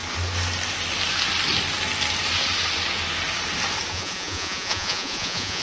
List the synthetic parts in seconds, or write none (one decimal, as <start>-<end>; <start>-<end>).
3.9-5.6